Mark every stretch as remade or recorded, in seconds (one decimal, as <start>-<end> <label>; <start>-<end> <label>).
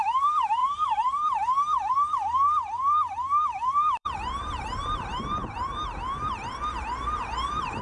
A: 0.0-7.8 remade